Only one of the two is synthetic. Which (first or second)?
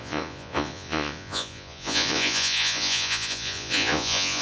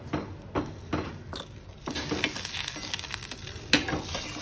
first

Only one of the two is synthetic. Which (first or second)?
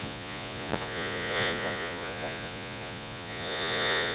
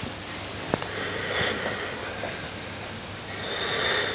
first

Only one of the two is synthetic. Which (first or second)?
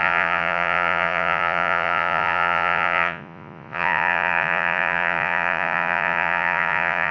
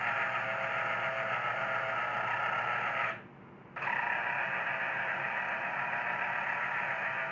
first